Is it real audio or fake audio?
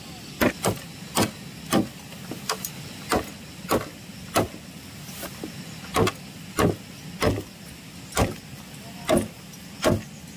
real